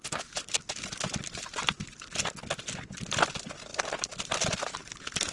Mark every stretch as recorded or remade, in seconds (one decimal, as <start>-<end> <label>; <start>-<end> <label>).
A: 0.0-5.3 recorded

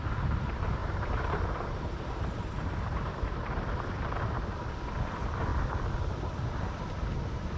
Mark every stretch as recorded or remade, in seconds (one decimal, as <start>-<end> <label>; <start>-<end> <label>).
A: 0.0-0.8 recorded; 0.8-3.5 remade; 3.5-7.6 recorded

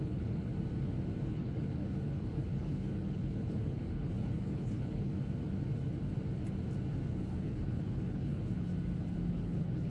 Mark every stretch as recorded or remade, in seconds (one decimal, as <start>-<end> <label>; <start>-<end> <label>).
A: 0.0-0.5 remade; 0.5-1.3 recorded; 1.3-5.1 remade; 5.1-7.1 recorded; 7.1-8.7 remade; 8.7-9.3 recorded; 9.3-9.9 remade

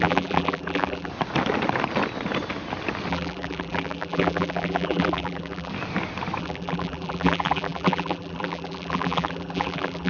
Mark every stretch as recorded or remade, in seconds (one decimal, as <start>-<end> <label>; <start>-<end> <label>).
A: 0.0-1.1 remade; 1.1-3.1 recorded; 3.1-5.7 remade; 5.7-6.4 recorded; 6.4-10.1 remade

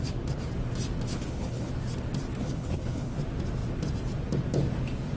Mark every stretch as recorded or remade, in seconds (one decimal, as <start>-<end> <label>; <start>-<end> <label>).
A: 0.0-1.1 recorded; 1.1-1.7 remade; 1.7-2.4 recorded; 2.4-3.2 remade; 3.2-5.2 recorded

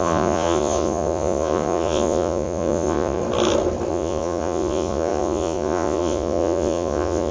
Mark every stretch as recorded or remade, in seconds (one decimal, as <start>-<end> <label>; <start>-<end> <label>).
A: 0.0-3.2 remade; 3.2-3.9 recorded; 3.9-7.3 remade

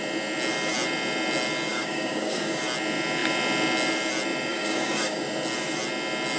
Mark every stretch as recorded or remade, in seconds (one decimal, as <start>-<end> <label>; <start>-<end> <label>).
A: 0.0-1.7 recorded; 1.7-2.6 remade; 2.6-4.5 recorded; 4.5-5.2 remade; 5.2-6.4 recorded

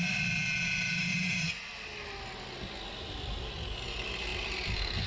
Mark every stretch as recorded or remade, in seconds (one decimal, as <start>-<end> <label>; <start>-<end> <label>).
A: 0.0-5.1 recorded